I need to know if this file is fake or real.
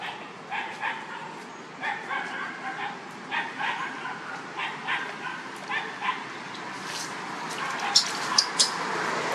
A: real